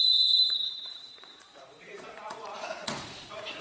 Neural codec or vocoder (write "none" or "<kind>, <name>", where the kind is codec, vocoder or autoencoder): vocoder, Vocos